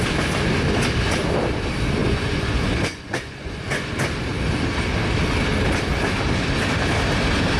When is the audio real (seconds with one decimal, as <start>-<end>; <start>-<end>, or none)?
0.0-2.0; 3.9-7.6